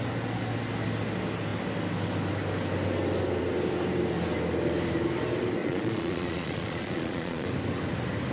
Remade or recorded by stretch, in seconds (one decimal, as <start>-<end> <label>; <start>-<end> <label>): 0.0-5.6 recorded; 5.6-7.5 remade; 7.5-8.3 recorded